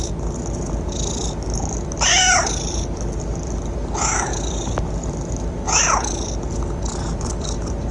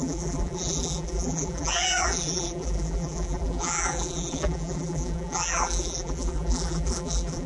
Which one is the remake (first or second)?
second